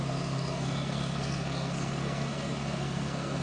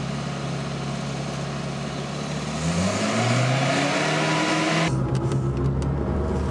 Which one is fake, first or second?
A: first